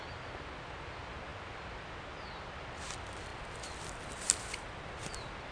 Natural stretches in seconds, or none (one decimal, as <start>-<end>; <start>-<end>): 0.0-5.5